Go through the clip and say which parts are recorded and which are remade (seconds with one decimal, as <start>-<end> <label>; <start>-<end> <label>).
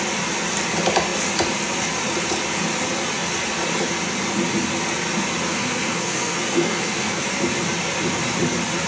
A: 0.0-5.5 recorded; 5.5-7.2 remade; 7.2-8.9 recorded